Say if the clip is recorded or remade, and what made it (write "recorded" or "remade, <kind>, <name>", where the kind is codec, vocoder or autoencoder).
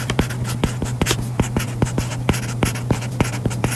recorded